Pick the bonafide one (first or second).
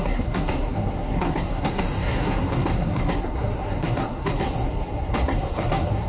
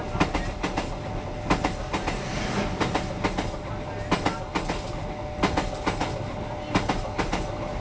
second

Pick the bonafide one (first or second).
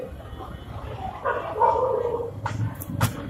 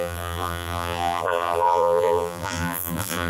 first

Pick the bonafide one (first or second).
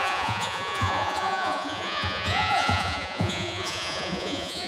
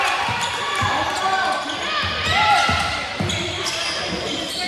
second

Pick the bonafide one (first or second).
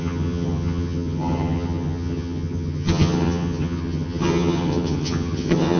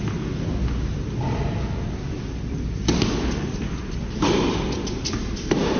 second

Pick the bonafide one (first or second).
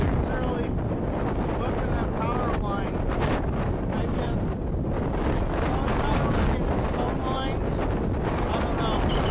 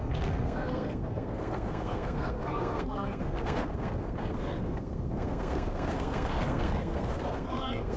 first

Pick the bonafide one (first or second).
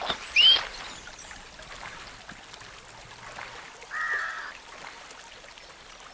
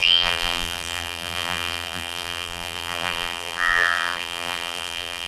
first